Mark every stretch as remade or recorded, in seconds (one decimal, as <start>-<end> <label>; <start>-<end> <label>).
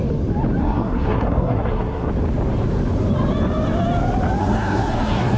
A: 0.0-0.6 recorded; 0.6-2.1 remade; 2.1-4.4 recorded; 4.4-5.4 remade